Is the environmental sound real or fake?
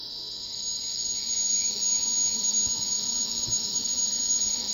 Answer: fake